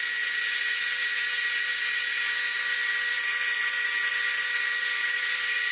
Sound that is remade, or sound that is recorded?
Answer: recorded